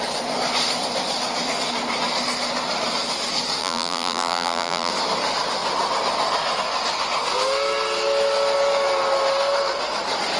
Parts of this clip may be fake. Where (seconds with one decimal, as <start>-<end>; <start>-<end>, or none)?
3.6-4.9